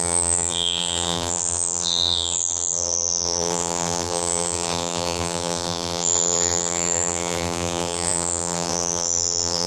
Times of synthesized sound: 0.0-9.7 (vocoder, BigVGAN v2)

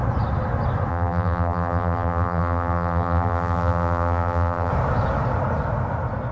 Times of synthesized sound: 0.9-4.7 (vocoder, BigVGAN v2)

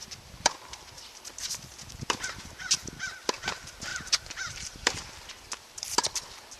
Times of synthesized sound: 3.9-5.3 (vocoder, BigVGAN v2)